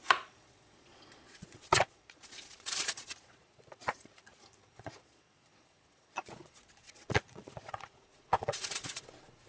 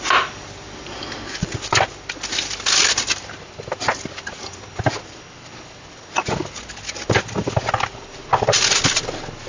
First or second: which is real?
second